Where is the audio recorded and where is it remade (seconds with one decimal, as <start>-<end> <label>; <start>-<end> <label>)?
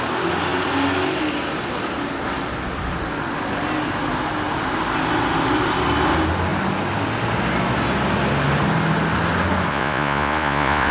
0.0-9.7 recorded; 9.7-10.9 remade